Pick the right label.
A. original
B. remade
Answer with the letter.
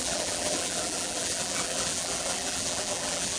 B